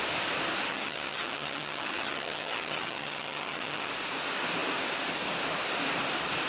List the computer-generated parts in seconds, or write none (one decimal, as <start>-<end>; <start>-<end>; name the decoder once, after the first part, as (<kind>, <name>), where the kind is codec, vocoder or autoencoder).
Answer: 0.7-3.9 (vocoder, HiFi-GAN)